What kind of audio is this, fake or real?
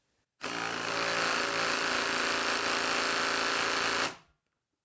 real